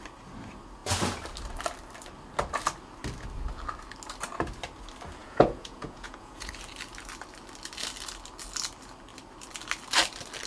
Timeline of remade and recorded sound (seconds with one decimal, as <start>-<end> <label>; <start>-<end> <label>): 0.0-5.2 recorded; 5.2-6.5 remade; 6.5-10.5 recorded